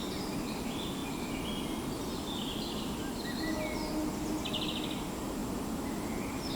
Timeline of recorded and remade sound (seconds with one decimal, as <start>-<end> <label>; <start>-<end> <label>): 0.0-5.4 recorded; 5.4-6.6 remade